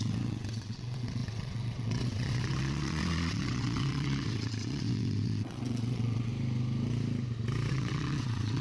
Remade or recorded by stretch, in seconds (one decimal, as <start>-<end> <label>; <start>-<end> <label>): 0.0-6.3 remade; 6.3-7.7 recorded; 7.7-8.6 remade